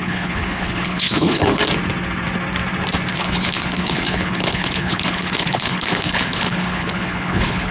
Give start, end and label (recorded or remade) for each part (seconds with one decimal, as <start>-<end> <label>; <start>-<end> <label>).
0.0-1.6 remade; 1.6-3.1 recorded; 3.1-7.7 remade